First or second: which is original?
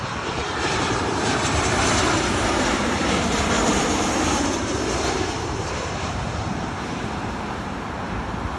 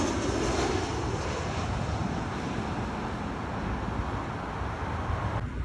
second